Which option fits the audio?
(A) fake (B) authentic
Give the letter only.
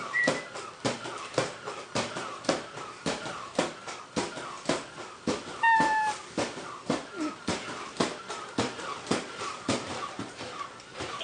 A